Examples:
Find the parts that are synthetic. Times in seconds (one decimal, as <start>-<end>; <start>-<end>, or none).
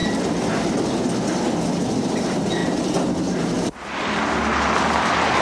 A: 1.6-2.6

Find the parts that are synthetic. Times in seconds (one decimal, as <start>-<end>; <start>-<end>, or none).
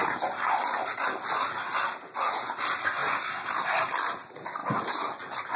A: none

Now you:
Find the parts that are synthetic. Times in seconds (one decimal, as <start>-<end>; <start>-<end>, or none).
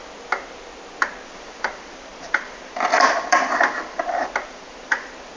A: 1.3-5.4